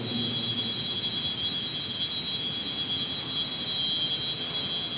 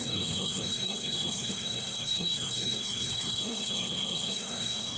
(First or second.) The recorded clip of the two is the first